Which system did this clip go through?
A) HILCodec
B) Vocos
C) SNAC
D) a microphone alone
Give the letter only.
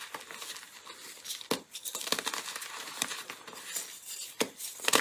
D